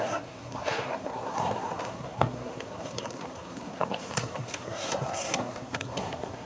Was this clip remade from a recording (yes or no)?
yes